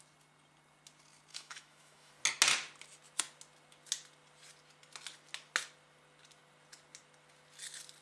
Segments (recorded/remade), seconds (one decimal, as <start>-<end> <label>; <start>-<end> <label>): 0.0-1.3 recorded; 1.3-2.1 remade; 2.1-8.0 recorded